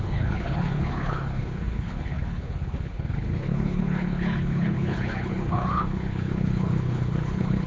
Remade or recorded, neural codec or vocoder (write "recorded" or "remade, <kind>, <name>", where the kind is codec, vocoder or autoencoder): remade, codec, HILCodec